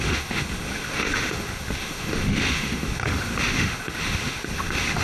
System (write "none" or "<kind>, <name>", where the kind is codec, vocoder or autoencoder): autoencoder, DAC-VAE